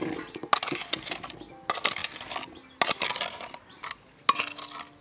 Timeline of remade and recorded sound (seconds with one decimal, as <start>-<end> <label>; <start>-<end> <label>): 0.0-5.0 recorded